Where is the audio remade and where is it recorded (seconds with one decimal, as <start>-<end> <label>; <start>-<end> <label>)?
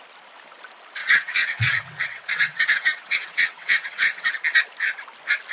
0.0-1.0 recorded; 1.0-4.3 remade; 4.3-5.5 recorded